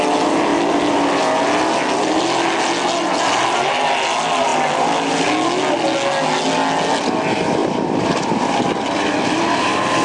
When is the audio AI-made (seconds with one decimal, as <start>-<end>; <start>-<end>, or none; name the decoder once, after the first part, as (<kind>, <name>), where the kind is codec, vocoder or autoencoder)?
7.6-8.4 (vocoder, BigVGAN v2)